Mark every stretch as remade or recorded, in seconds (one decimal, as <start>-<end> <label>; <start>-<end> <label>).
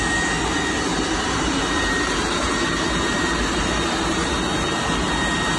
0.0-0.9 recorded; 0.9-4.3 remade; 4.3-5.6 recorded